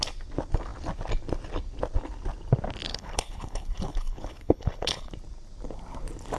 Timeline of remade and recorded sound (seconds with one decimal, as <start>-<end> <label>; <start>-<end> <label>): 0.0-2.9 recorded; 2.9-5.1 remade; 5.1-6.4 recorded